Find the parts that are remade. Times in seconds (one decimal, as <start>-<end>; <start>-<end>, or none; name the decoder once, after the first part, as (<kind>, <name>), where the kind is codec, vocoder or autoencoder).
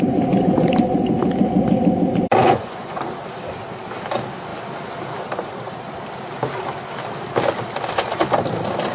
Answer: 2.4-3.0 (vocoder, Vocos)